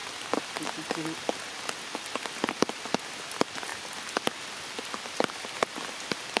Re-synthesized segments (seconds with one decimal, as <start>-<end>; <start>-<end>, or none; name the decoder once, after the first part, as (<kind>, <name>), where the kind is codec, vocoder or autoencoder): 3.7-4.6 (vocoder, BigVGAN v2)